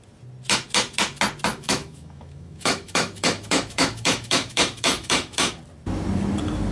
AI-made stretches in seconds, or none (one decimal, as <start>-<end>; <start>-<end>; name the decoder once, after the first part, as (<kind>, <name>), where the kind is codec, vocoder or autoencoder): 1.5-5.5 (autoencoder, DAC-VAE)